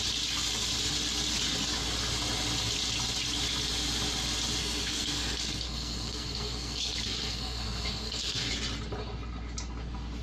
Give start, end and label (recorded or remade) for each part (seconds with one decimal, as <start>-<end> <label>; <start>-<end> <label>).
0.0-4.6 recorded; 4.6-8.5 remade; 8.5-10.2 recorded